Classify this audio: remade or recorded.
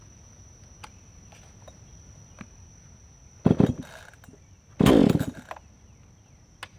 recorded